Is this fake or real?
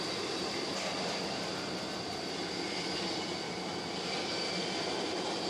fake